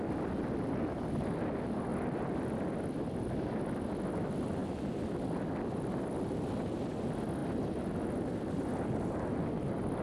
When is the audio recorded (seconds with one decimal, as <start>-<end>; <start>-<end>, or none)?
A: 0.0-10.0